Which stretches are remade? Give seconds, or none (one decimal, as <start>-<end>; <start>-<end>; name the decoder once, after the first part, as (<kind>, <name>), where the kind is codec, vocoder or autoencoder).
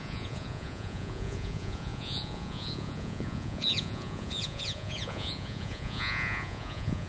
0.0-7.1 (vocoder, Vocos)